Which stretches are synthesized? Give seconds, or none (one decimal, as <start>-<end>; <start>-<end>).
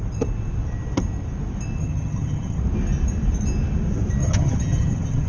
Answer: 1.8-2.6; 4.2-5.3